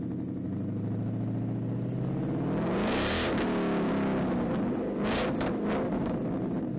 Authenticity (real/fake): real